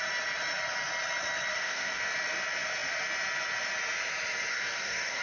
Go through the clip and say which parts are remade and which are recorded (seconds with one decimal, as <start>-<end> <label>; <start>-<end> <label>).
0.0-1.5 recorded; 1.5-2.0 remade; 2.0-4.5 recorded; 4.5-5.2 remade